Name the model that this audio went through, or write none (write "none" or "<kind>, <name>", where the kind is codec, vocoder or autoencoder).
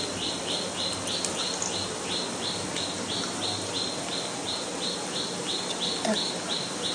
none